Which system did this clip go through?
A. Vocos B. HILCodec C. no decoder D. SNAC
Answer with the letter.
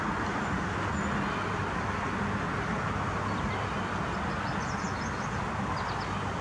C